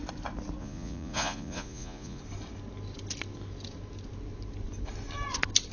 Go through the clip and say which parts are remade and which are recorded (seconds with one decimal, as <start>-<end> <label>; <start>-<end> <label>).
0.0-0.6 recorded; 0.6-2.2 remade; 2.2-5.7 recorded

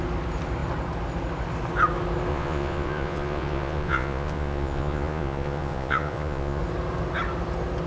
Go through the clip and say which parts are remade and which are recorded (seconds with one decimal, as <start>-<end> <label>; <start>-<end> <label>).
0.0-2.3 recorded; 2.3-6.6 remade; 6.6-7.9 recorded